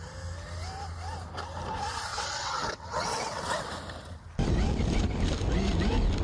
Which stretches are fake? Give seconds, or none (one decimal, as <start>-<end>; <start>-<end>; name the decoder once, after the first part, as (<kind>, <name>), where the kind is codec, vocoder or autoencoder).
2.1-3.7 (vocoder, WaveNeXt)